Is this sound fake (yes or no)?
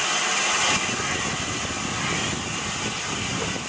no